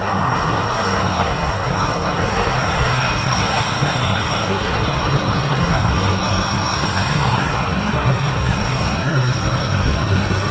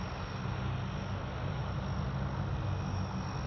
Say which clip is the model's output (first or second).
first